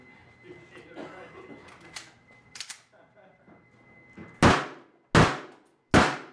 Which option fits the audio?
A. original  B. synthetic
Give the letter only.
A